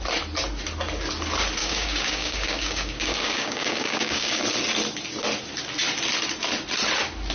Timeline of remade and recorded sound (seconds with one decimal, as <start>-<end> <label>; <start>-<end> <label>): 0.0-1.6 recorded; 1.6-4.4 remade; 4.4-7.3 recorded